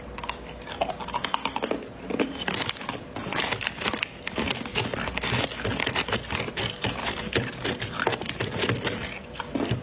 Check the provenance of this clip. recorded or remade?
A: recorded